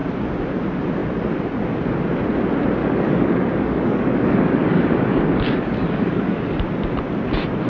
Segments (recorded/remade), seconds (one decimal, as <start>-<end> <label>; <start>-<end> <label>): 0.0-2.8 recorded; 2.8-6.4 remade; 6.4-7.7 recorded